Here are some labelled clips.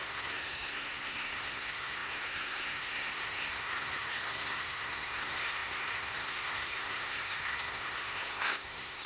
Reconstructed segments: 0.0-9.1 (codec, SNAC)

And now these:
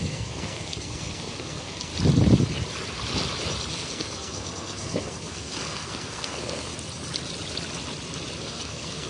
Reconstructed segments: 0.0-1.9 (codec, SNAC); 3.7-6.7; 8.4-9.1

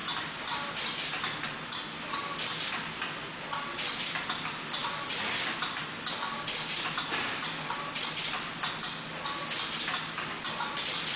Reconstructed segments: none